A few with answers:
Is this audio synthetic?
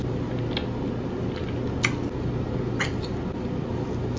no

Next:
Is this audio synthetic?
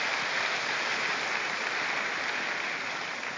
no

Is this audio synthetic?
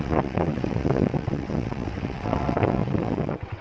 yes